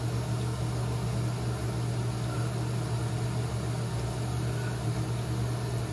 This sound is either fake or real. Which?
real